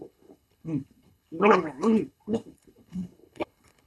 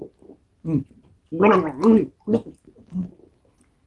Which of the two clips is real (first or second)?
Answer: second